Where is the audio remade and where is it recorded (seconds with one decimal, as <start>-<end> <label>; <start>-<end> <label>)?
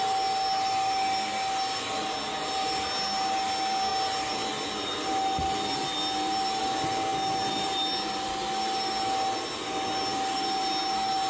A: 0.0-11.3 recorded